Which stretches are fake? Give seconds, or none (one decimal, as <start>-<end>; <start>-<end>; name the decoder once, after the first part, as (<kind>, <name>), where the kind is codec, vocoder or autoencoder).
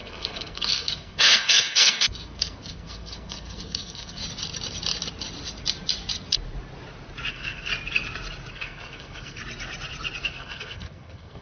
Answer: 0.0-4.2 (codec, SNAC); 7.3-7.7; 8.5-9.4; 10.2-11.4